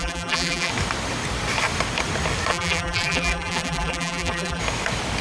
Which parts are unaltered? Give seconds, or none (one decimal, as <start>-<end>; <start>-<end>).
0.7-2.5; 4.6-5.2